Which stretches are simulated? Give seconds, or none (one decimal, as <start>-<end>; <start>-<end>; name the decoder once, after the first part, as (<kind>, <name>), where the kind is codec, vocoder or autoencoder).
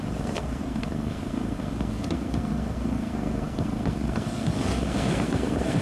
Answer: 0.0-5.8 (codec, SNAC)